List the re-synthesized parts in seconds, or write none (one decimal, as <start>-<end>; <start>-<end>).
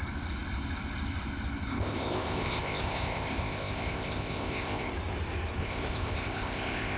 1.7-4.9; 5.6-7.0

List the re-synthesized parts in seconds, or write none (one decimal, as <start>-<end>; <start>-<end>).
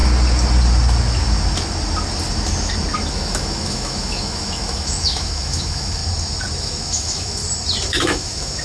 3.1-6.0; 6.6-7.4; 7.9-8.6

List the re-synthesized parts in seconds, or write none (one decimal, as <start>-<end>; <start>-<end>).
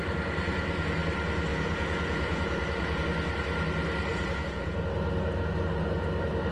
1.5-3.0; 4.1-4.8